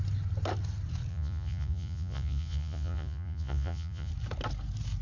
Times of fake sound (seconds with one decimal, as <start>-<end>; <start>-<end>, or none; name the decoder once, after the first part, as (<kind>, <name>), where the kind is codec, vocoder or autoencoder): 1.1-4.1 (vocoder, Vocos)